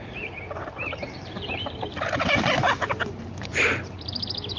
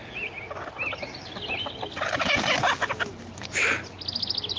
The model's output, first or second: first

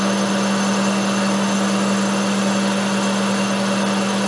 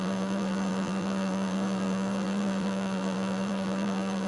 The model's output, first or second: second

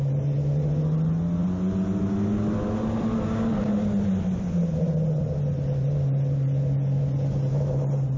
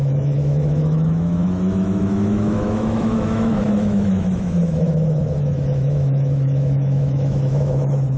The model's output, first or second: second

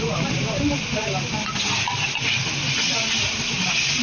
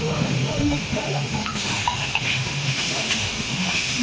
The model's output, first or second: second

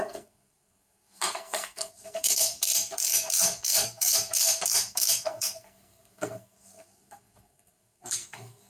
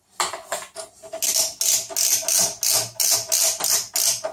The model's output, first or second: first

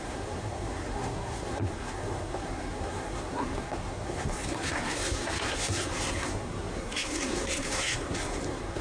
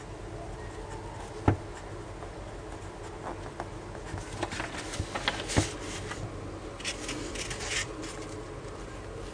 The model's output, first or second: first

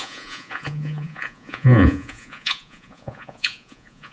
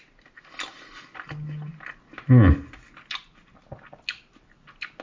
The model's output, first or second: first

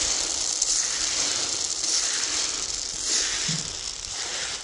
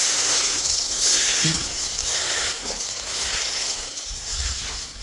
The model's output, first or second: second